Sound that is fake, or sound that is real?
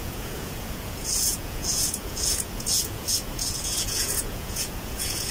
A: fake